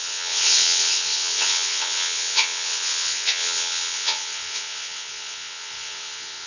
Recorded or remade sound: remade